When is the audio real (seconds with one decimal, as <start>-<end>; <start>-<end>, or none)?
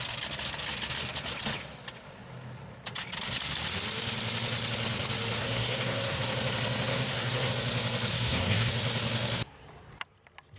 0.0-5.4; 6.2-6.9; 7.5-8.1; 8.7-10.6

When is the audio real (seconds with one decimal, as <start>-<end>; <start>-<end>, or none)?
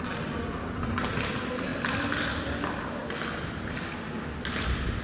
0.0-5.0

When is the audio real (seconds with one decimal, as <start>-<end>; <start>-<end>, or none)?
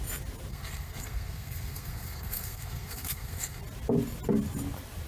0.0-0.5; 3.6-5.1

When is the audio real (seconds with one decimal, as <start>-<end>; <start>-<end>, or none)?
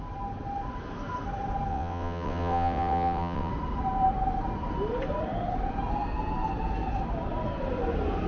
0.0-1.7; 3.5-8.3